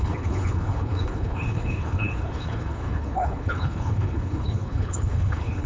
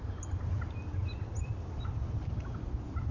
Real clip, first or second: second